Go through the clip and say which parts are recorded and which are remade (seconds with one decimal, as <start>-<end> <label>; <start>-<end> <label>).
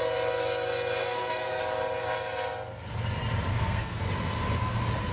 0.0-1.0 recorded; 1.0-1.6 remade; 1.6-3.5 recorded; 3.5-4.0 remade; 4.0-5.1 recorded